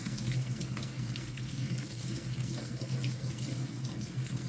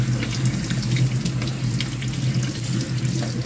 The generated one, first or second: first